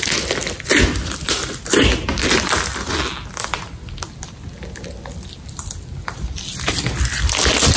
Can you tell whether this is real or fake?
real